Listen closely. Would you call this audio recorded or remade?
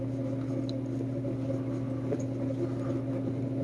recorded